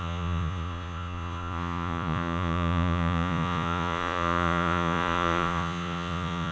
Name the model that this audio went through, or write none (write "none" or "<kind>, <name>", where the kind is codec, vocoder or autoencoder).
vocoder, Vocos